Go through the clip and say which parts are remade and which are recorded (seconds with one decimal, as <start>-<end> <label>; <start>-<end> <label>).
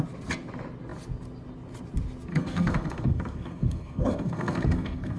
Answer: 0.0-2.3 recorded; 2.3-5.2 remade